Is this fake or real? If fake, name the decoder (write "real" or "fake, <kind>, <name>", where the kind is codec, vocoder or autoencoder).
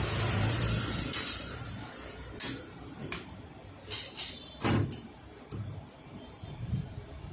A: fake, vocoder, BigVGAN v2